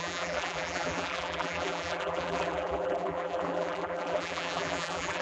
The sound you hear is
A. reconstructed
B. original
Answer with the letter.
A